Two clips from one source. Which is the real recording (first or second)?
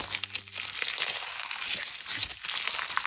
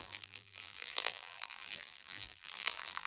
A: first